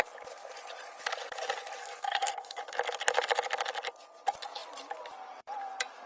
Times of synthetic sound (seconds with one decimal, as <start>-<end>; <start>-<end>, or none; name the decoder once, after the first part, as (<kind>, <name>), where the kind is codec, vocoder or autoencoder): 1.8-2.6 (codec, SNAC)